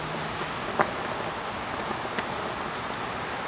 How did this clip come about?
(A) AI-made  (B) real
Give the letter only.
B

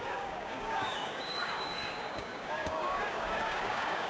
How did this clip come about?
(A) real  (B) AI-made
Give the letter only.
B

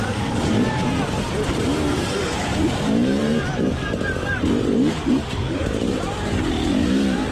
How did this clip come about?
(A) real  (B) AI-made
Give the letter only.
B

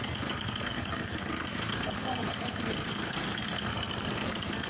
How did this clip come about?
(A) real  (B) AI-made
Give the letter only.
B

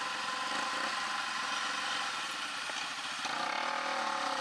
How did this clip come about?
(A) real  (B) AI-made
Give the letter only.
A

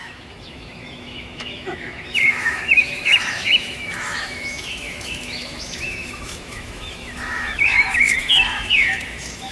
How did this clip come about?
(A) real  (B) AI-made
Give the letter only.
B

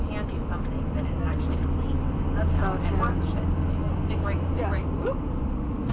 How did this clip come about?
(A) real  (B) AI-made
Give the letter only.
A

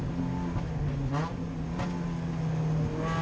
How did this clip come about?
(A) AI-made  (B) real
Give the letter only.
B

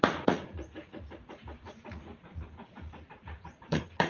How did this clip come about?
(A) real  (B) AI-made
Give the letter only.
B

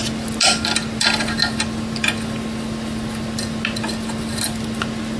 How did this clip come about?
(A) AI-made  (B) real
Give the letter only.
B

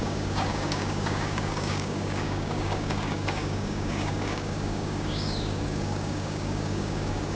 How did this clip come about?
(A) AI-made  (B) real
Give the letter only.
A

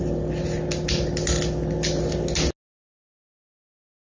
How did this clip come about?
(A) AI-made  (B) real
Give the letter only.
B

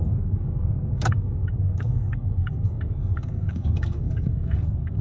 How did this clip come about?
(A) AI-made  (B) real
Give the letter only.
A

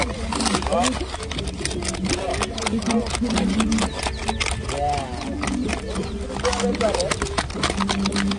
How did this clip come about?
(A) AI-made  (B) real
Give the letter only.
B